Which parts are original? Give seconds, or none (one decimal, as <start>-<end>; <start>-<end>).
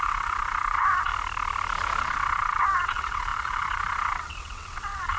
1.1-2.0